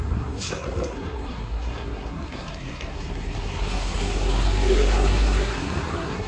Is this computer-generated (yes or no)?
yes